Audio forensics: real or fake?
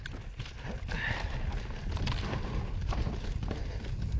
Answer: real